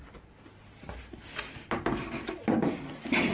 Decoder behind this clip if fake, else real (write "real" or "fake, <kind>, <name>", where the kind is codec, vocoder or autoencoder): real